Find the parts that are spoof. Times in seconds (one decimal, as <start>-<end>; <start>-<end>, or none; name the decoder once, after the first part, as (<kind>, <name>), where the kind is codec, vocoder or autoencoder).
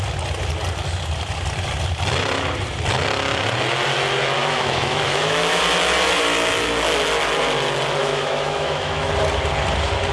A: 4.4-5.6 (autoencoder, DAC-VAE); 8.0-9.1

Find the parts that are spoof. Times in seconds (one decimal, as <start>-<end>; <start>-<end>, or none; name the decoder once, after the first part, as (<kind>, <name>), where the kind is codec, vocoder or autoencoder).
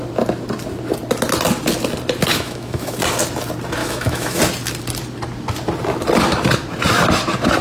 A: 2.3-3.0 (autoencoder, DAC-VAE); 3.8-4.4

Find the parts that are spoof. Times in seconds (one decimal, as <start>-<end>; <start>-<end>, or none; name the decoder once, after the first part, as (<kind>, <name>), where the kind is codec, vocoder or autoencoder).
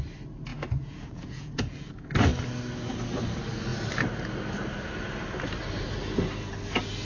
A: 0.5-1.9 (vocoder, Vocos)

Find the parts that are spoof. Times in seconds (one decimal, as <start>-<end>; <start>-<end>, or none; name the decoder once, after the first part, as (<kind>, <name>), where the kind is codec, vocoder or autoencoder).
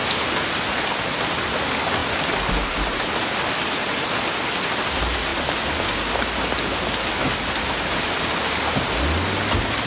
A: none